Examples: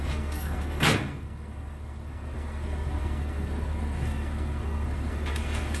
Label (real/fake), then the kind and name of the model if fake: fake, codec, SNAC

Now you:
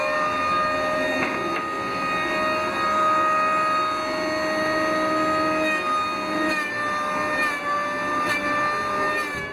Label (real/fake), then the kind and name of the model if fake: real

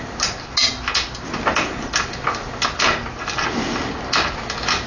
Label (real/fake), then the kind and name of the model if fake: real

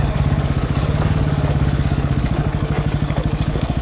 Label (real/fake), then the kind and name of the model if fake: fake, codec, DAC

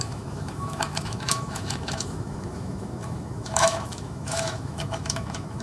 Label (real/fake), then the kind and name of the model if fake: fake, autoencoder, DAC-VAE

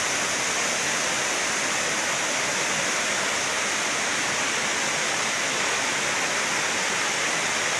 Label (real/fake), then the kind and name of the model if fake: real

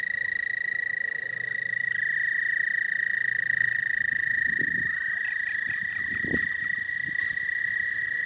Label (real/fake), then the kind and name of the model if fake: real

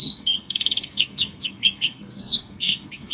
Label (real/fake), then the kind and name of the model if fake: fake, codec, SNAC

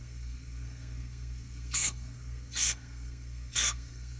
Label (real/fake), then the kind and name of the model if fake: fake, codec, SNAC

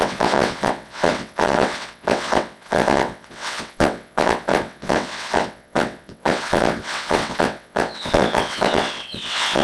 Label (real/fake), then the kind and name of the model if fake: fake, vocoder, WaveNeXt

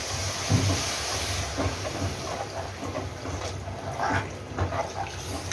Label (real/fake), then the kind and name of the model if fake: real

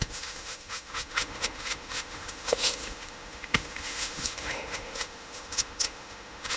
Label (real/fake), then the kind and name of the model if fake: fake, autoencoder, DAC-VAE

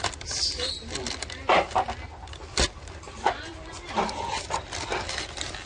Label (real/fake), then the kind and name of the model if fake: real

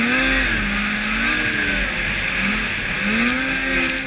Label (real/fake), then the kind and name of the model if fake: real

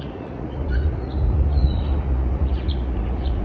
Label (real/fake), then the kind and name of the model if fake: fake, vocoder, Vocos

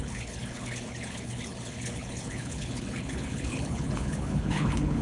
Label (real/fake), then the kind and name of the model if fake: fake, codec, HILCodec